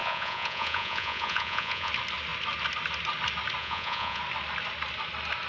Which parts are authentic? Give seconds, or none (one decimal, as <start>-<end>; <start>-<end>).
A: 1.9-3.6; 4.2-5.5